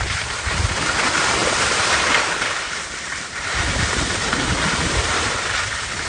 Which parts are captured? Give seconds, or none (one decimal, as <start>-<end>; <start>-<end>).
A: 0.0-1.4; 4.5-6.1